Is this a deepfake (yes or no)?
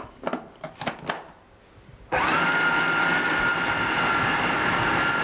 no